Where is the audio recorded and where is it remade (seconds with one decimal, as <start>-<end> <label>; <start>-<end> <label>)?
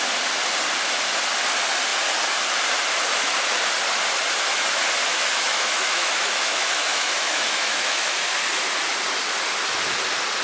0.0-5.1 recorded; 5.1-8.2 remade; 8.2-10.4 recorded